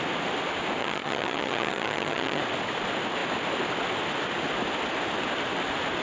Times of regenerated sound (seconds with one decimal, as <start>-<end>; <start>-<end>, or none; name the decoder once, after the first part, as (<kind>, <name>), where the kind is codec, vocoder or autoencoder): 0.8-2.4 (vocoder, HiFi-GAN)